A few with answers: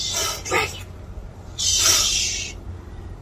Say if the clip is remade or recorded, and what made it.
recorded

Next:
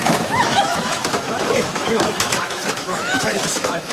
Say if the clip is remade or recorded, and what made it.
remade, autoencoder, DAC-VAE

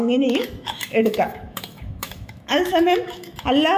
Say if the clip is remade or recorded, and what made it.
remade, autoencoder, DAC-VAE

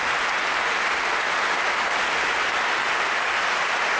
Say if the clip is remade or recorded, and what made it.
recorded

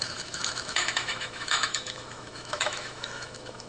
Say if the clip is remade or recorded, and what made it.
remade, autoencoder, DAC-VAE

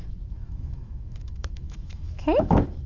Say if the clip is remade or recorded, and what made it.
remade, autoencoder, DAC-VAE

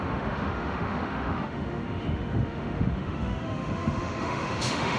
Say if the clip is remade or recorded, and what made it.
remade, autoencoder, DAC-VAE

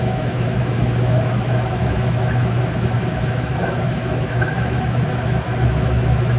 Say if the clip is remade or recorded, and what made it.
remade, autoencoder, DAC-VAE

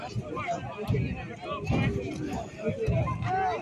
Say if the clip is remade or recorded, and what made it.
recorded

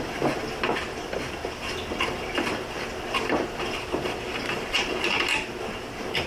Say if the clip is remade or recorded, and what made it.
recorded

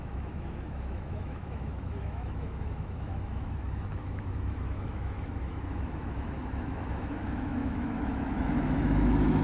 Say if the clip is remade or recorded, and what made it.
remade, autoencoder, DAC-VAE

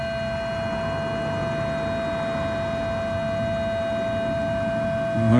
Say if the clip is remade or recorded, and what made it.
recorded